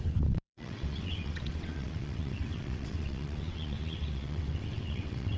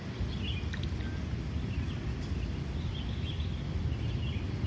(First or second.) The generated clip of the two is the first